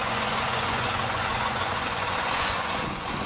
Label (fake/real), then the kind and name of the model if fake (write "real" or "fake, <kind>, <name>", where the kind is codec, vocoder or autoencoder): fake, vocoder, Vocos